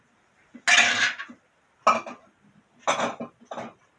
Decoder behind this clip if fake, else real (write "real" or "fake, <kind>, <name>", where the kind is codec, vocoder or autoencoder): real